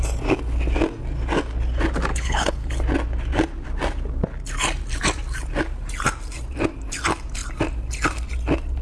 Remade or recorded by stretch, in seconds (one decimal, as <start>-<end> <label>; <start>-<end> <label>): 0.0-2.1 recorded; 2.1-2.7 remade; 2.7-8.8 recorded